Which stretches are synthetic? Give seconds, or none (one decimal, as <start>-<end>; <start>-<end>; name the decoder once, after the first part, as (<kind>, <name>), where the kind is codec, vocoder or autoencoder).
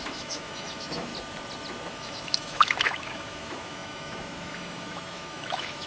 0.0-1.1 (autoencoder, DAC-VAE); 1.9-5.9